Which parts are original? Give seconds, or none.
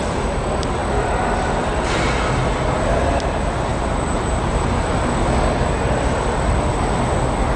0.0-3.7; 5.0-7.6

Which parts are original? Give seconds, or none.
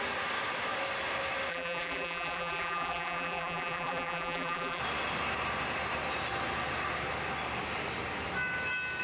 0.0-1.5; 4.8-9.0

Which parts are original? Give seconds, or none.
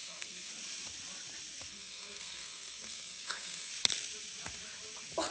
0.5-1.7; 3.7-5.3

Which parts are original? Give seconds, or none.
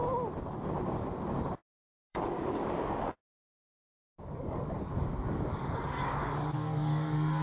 0.0-1.6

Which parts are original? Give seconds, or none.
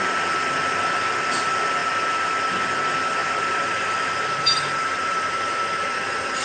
0.0-3.2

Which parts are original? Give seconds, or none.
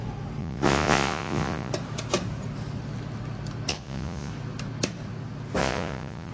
0.0-0.4; 1.7-3.7; 4.3-5.6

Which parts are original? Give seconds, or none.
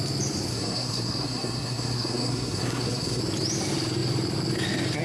0.0-0.5; 3.2-5.0